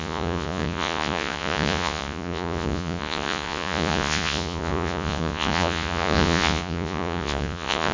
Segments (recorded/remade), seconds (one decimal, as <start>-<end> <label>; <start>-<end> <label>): 0.0-7.9 remade